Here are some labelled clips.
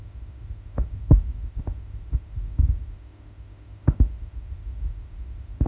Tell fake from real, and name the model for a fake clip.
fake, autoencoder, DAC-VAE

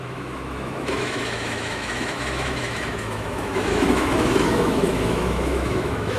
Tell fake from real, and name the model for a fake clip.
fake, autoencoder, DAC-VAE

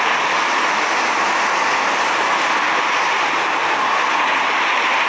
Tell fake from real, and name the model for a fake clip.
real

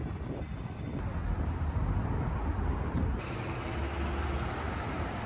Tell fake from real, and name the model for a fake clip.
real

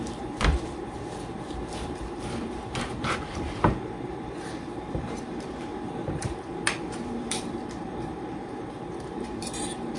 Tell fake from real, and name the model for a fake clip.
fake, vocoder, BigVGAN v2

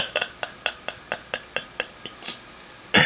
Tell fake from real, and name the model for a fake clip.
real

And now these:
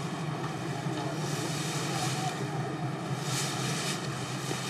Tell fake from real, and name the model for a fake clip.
fake, vocoder, BigVGAN v2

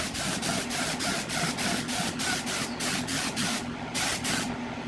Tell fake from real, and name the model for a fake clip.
real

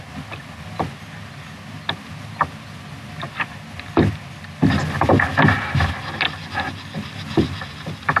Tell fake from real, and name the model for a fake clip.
real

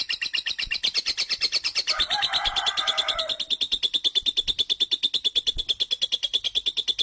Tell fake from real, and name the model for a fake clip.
real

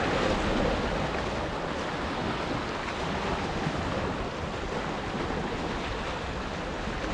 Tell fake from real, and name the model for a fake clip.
real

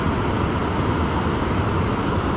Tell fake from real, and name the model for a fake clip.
real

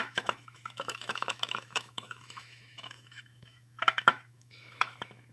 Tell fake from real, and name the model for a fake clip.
fake, autoencoder, DAC-VAE